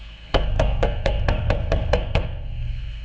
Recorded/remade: remade